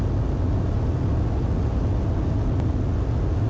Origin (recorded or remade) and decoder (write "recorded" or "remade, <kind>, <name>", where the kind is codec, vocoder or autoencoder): recorded